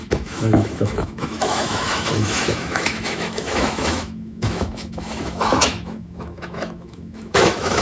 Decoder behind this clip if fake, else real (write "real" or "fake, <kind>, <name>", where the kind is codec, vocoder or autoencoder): fake, autoencoder, DAC-VAE